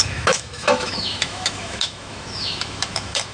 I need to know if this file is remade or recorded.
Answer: remade